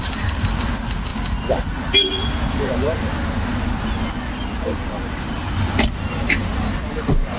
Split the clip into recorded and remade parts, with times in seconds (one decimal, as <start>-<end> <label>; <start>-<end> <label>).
0.0-7.4 recorded